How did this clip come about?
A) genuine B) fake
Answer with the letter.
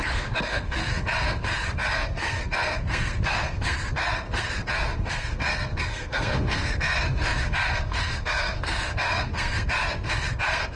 B